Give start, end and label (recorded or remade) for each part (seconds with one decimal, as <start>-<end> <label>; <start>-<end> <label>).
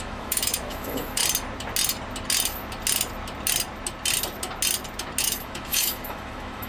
0.0-1.2 remade; 1.2-5.2 recorded; 5.2-6.7 remade